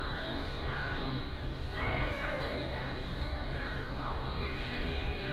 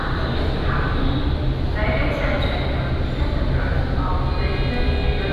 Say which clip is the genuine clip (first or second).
second